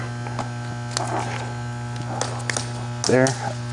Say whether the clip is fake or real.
real